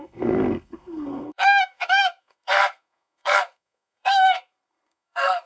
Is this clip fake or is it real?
fake